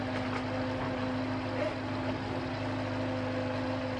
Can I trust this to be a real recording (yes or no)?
yes